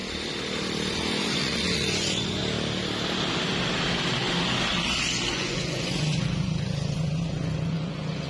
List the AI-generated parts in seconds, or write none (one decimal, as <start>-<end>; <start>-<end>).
0.9-2.4; 5.3-8.3